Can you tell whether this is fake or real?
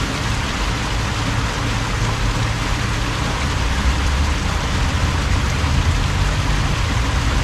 real